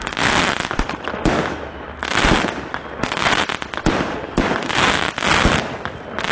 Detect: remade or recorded recorded